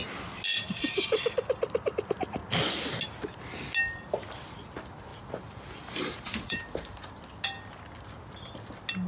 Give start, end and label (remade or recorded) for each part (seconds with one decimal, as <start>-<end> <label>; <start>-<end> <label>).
0.0-0.5 recorded; 0.5-1.2 remade; 1.2-5.1 recorded; 5.1-7.2 remade; 7.2-9.1 recorded